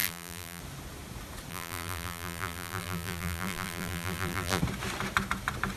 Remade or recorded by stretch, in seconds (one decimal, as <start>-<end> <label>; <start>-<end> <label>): 0.0-0.6 remade; 0.6-1.5 recorded; 1.5-4.6 remade; 4.6-5.8 recorded